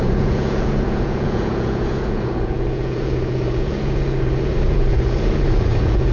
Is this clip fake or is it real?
fake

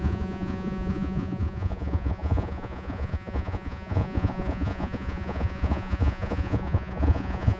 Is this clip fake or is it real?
fake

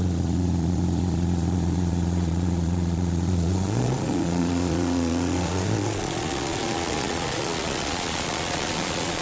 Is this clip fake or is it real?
fake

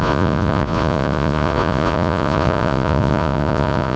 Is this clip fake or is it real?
fake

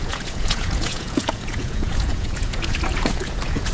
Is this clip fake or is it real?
fake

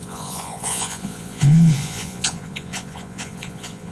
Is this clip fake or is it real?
fake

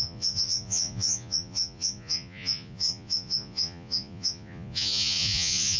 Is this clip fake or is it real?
fake